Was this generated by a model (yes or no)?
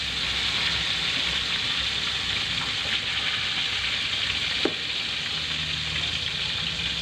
no